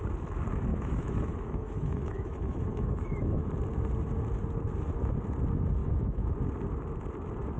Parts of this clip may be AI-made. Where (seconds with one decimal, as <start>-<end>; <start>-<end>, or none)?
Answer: 0.7-3.5; 5.8-6.3